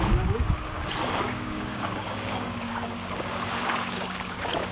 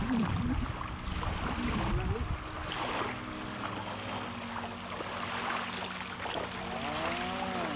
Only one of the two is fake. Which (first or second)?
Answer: first